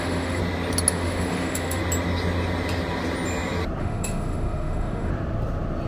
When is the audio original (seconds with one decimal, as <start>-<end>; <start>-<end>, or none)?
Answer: 0.4-0.9; 1.8-3.8; 5.1-5.9